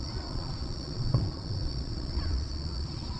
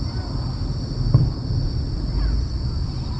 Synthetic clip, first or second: first